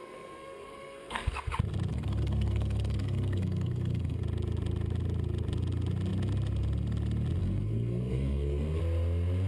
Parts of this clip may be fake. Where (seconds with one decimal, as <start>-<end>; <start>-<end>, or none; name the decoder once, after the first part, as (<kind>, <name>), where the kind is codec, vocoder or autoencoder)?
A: 0.0-1.5 (codec, SNAC); 1.9-4.2; 7.4-8.8